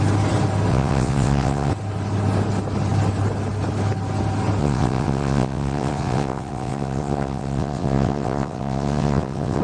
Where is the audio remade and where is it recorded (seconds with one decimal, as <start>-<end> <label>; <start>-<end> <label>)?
0.0-0.7 recorded; 0.7-1.7 remade; 1.7-4.6 recorded; 4.6-9.6 remade